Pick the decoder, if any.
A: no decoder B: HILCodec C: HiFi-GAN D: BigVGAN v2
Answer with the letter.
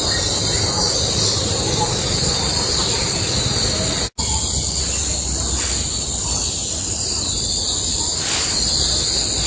A